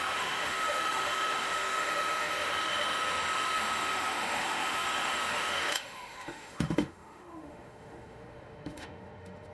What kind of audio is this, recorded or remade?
remade